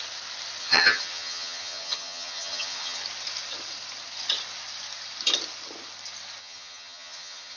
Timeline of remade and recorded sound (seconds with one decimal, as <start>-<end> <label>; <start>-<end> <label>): 0.0-0.6 recorded; 0.6-3.0 remade; 3.0-6.4 recorded; 6.4-7.6 remade